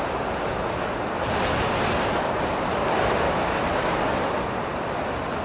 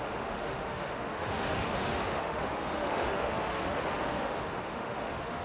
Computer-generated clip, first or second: second